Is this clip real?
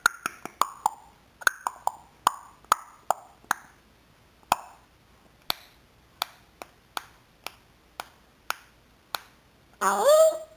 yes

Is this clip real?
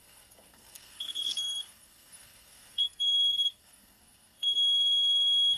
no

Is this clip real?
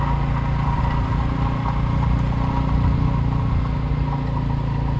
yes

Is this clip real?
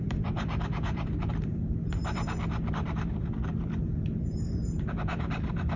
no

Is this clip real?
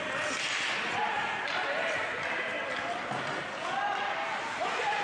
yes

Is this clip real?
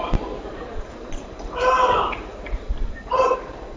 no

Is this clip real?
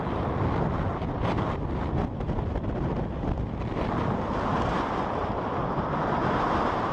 yes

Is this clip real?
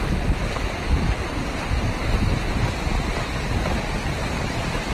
yes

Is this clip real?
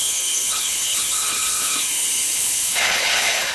no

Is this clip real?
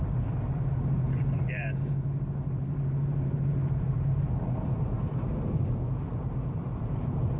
no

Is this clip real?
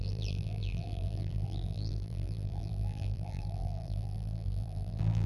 no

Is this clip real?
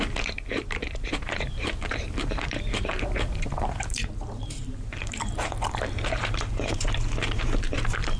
no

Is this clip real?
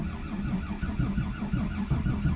yes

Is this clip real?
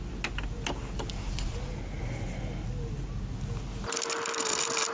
yes